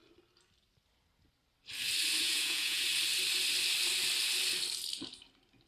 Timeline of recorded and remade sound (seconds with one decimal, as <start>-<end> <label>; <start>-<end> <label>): 0.0-2.2 recorded; 2.2-2.9 remade; 2.9-5.7 recorded